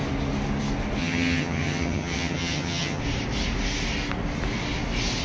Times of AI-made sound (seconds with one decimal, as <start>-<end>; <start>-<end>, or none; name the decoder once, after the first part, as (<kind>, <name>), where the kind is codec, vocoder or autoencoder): 1.0-3.0 (vocoder, HiFi-GAN)